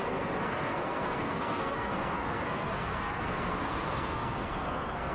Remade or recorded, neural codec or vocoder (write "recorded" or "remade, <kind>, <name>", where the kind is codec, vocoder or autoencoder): remade, codec, SNAC